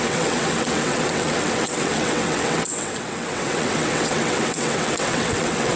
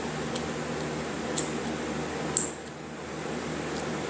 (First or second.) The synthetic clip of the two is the first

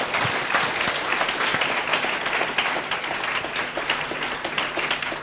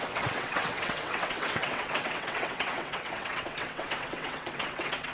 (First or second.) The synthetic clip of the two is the second